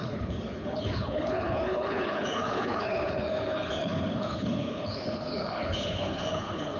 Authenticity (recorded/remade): remade